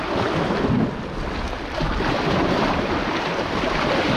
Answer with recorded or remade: recorded